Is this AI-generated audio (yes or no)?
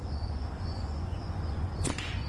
yes